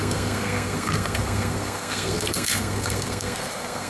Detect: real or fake fake